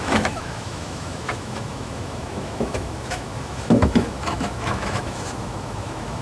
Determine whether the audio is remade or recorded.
remade